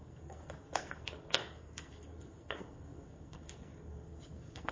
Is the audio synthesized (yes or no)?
yes